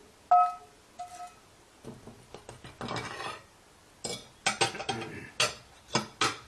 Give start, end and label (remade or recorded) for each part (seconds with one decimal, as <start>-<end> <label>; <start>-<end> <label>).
0.0-6.5 recorded

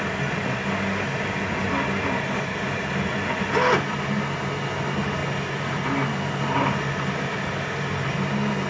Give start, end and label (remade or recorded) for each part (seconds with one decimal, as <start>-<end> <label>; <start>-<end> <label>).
0.0-8.7 recorded

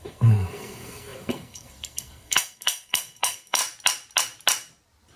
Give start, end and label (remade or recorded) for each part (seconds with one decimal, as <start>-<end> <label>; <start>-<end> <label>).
0.0-3.6 remade; 3.6-5.2 recorded

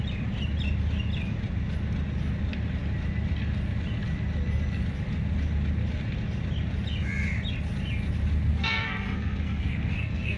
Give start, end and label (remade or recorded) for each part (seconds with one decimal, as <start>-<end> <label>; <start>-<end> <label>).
0.0-8.5 recorded; 8.5-10.4 remade

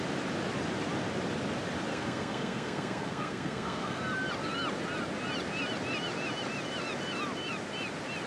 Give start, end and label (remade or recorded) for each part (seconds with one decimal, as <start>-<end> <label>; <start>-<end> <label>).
0.0-1.9 recorded; 1.9-4.0 remade; 4.0-8.3 recorded

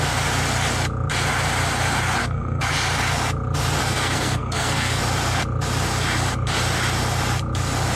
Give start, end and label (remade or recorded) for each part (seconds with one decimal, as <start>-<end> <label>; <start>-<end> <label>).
0.0-2.2 recorded; 2.2-2.7 remade; 2.7-3.8 recorded; 3.8-5.0 remade; 5.0-8.0 recorded

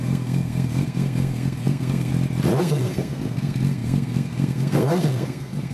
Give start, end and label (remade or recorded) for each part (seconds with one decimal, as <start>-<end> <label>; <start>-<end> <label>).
0.0-2.1 remade; 2.1-2.6 recorded; 2.6-5.7 remade

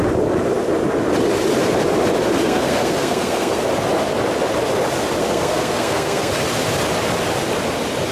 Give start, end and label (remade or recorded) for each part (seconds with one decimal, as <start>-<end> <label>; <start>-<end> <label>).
0.0-2.4 recorded; 2.4-3.7 remade; 3.7-5.2 recorded; 5.2-6.3 remade; 6.3-8.1 recorded